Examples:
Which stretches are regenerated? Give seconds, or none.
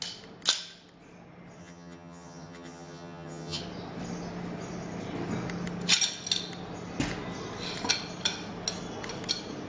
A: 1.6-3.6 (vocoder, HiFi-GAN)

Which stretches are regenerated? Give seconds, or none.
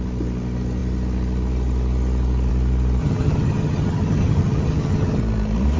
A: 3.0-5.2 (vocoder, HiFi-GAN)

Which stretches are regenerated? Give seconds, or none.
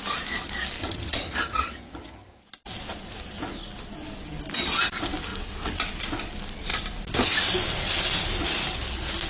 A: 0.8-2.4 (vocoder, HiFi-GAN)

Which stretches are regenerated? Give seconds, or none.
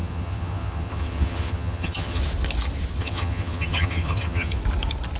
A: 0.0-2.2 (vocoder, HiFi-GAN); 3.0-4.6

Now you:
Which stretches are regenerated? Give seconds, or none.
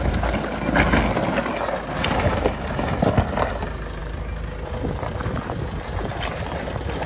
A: none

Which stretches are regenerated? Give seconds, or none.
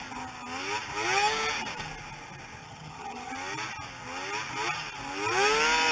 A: 2.6-3.3 (vocoder, HiFi-GAN)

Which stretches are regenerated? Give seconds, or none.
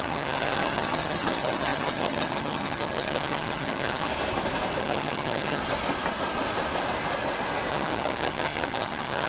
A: 0.0-4.1 (vocoder, HiFi-GAN); 4.8-5.6; 7.7-9.3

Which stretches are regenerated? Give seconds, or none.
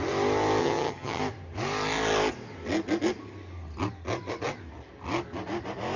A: 0.6-1.2 (vocoder, HiFi-GAN)